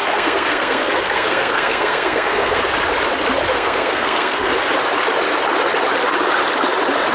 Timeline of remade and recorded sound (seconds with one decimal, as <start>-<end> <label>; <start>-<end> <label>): 0.0-2.6 remade; 2.6-3.5 recorded; 3.5-4.5 remade; 4.5-7.1 recorded